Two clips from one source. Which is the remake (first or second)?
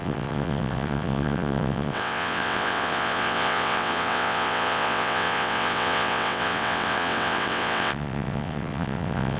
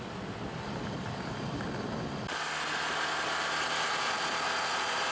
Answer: first